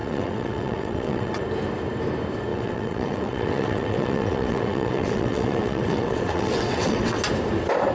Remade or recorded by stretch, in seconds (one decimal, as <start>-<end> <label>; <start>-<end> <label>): 0.0-1.4 remade; 1.4-2.5 recorded; 2.5-7.2 remade; 7.2-7.9 recorded